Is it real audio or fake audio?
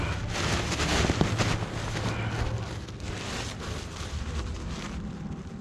real